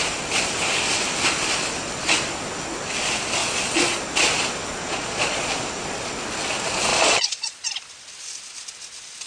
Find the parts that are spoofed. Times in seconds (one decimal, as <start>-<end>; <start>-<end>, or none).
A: 3.4-4.0; 4.8-5.5; 6.9-7.7